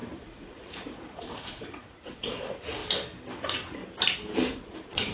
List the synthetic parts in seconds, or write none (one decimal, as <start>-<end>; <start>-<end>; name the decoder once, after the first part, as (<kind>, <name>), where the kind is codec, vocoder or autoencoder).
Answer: 0.0-2.8 (vocoder, Vocos); 3.4-3.8; 4.5-5.1